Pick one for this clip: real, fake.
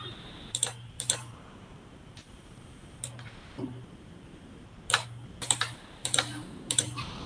fake